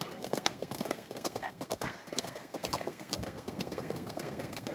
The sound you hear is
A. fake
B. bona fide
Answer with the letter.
A